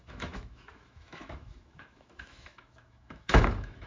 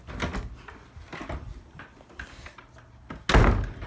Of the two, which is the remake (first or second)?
first